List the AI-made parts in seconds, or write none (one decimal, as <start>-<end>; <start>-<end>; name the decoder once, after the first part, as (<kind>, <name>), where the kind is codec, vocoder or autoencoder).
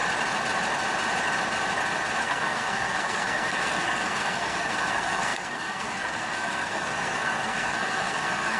2.2-8.6 (codec, SNAC)